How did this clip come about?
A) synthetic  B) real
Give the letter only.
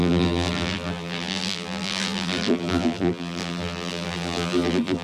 A